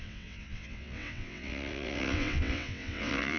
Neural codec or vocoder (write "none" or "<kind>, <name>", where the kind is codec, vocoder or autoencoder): vocoder, WaveNeXt